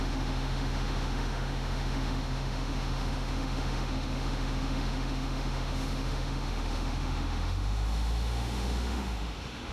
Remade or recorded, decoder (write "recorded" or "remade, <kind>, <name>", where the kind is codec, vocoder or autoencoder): remade, autoencoder, DAC-VAE